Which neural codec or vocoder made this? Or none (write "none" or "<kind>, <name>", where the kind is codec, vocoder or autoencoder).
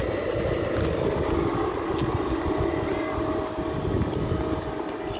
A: none